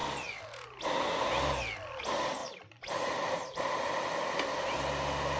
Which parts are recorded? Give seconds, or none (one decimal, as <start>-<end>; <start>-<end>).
0.0-2.4; 3.7-5.4